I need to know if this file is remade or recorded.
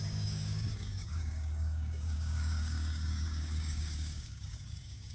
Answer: remade